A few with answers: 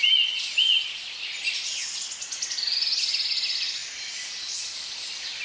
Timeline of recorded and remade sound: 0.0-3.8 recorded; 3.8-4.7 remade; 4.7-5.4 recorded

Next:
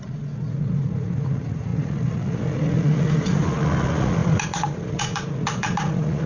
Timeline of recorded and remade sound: 0.0-6.3 remade

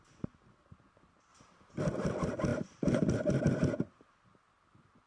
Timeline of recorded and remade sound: 0.0-1.3 recorded; 1.3-1.8 remade; 1.8-2.5 recorded; 2.5-3.4 remade; 3.4-5.1 recorded

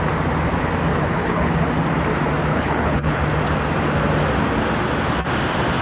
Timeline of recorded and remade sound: 0.0-0.9 recorded; 0.9-1.5 remade; 1.5-2.5 recorded; 2.5-3.2 remade; 3.2-5.8 recorded

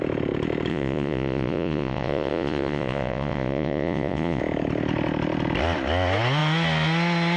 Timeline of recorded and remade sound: 0.0-0.7 recorded; 0.7-4.4 remade; 4.4-7.4 recorded